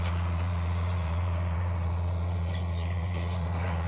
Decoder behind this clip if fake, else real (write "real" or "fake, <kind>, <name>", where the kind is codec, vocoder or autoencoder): fake, vocoder, Vocos